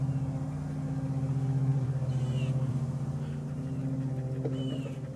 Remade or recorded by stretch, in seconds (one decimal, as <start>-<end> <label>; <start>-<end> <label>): 0.0-1.7 recorded; 1.7-4.8 remade; 4.8-5.2 recorded